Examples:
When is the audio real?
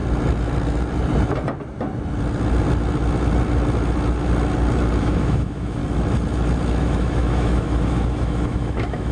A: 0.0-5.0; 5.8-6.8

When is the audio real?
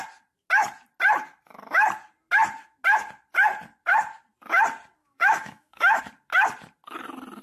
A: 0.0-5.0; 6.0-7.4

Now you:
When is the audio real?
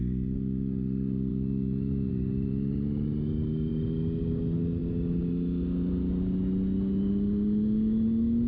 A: 0.0-1.3; 2.1-8.5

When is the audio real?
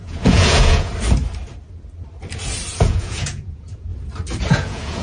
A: 0.9-2.7; 3.9-4.5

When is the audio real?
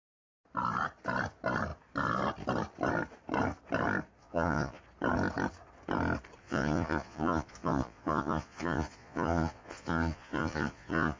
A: 0.0-4.2; 4.8-6.4